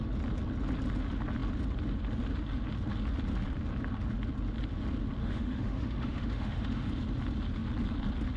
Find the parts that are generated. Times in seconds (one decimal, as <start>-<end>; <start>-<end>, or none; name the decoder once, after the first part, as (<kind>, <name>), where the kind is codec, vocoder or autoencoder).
5.2-6.9 (autoencoder, DAC-VAE)